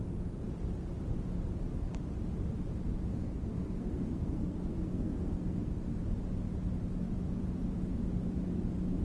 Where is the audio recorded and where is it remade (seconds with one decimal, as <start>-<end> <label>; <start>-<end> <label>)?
0.0-3.1 recorded; 3.1-6.0 remade; 6.0-9.0 recorded